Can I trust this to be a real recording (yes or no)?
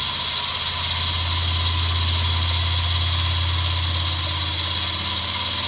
yes